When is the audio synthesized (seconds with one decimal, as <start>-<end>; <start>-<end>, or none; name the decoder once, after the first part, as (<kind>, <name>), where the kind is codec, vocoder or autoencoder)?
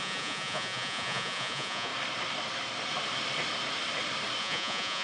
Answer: 0.0-1.9 (vocoder, Vocos); 4.4-5.0